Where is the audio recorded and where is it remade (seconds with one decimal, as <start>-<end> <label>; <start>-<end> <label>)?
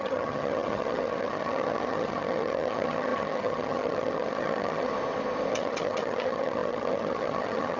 0.0-4.9 remade; 4.9-5.5 recorded; 5.5-7.8 remade